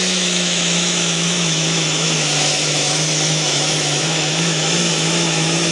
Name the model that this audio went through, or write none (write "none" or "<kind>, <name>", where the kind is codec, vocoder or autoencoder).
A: autoencoder, DAC-VAE